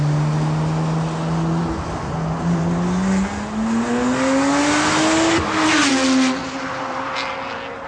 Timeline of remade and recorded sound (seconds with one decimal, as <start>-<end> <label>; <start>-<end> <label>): 0.0-6.4 recorded; 6.4-7.1 remade; 7.1-7.9 recorded